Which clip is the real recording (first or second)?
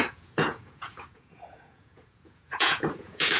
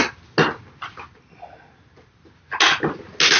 second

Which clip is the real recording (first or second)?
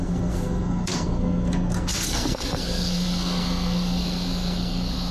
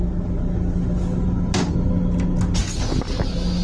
second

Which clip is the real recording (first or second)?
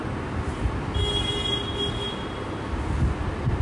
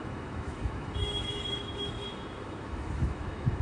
first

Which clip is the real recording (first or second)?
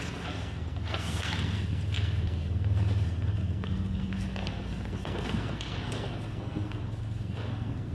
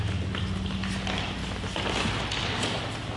second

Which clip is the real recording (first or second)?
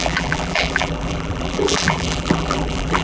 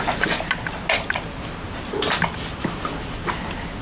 second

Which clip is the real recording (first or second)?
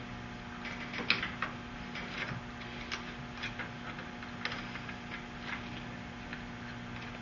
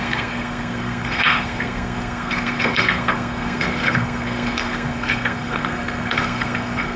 first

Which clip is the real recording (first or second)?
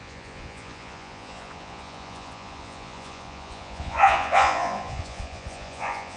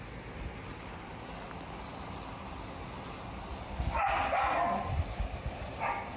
second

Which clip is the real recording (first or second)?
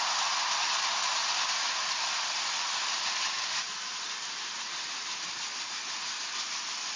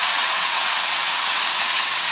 first